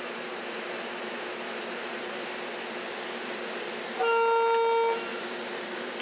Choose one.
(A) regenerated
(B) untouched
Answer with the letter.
B